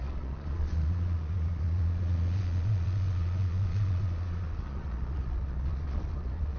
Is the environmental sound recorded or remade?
remade